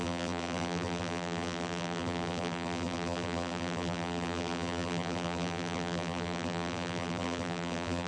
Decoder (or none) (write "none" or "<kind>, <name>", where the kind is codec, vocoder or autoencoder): vocoder, BigVGAN v2